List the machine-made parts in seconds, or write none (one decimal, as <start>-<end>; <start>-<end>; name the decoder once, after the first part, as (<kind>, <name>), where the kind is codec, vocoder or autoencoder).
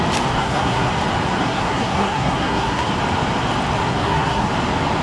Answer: 0.4-0.9 (codec, SNAC); 1.4-2.9; 3.8-4.5